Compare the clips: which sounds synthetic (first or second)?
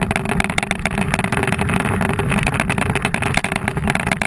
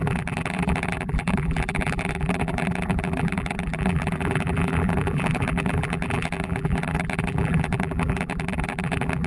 second